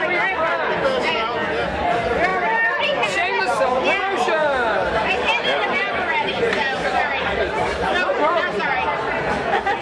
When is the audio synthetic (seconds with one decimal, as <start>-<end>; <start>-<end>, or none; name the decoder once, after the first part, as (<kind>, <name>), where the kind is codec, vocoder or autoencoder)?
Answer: 4.4-9.3 (vocoder, BigVGAN v2)